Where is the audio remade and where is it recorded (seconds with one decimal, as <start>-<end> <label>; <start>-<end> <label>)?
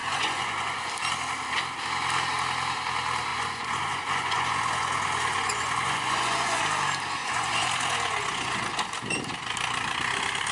0.0-0.9 remade; 0.9-3.3 recorded; 3.3-6.6 remade; 6.6-7.2 recorded; 7.2-8.6 remade; 8.6-10.5 recorded